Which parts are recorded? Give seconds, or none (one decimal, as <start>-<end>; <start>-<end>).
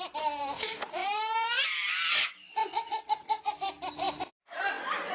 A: 0.0-5.1